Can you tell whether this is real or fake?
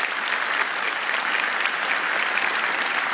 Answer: real